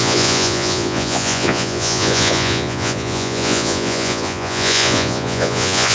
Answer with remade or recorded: remade